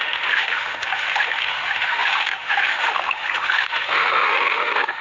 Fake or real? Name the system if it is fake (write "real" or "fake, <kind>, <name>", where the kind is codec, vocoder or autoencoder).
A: fake, autoencoder, DAC-VAE